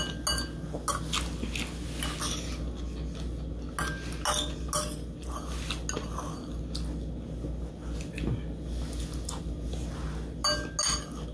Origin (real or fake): real